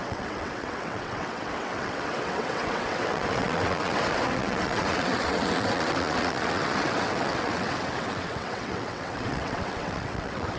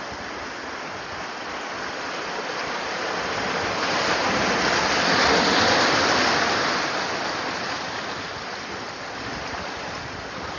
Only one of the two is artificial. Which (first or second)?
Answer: first